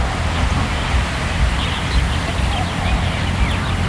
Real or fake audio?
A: real